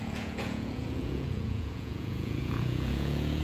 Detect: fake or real fake